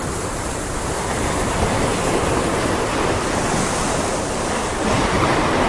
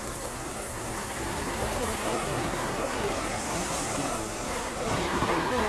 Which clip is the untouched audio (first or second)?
first